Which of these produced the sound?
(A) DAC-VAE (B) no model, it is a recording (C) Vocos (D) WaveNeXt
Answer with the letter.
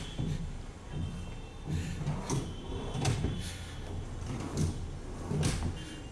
B